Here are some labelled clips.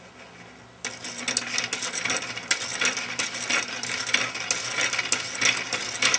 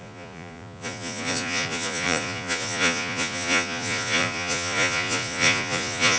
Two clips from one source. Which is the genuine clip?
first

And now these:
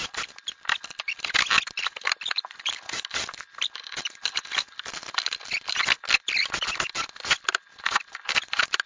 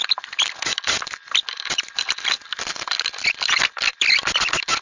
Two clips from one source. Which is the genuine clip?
first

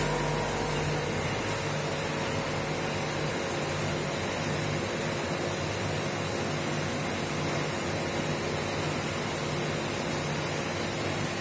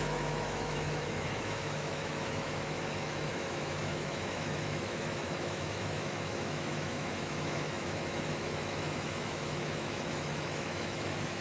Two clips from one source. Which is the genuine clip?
first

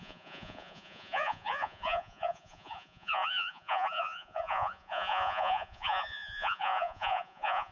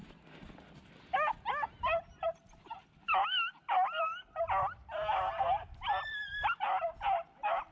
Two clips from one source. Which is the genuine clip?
second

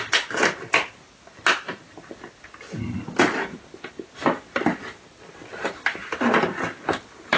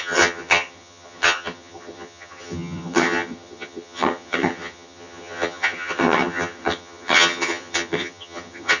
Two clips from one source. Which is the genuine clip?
first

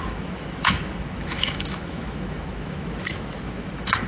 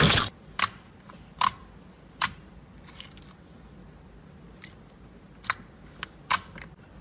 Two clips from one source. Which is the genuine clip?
second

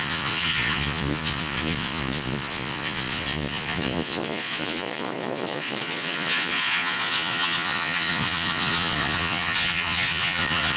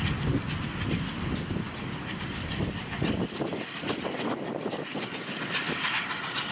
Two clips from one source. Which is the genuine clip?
second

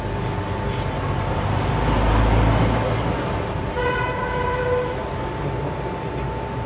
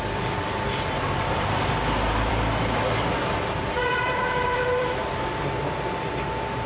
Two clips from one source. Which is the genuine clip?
first